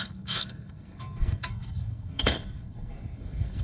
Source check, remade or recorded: remade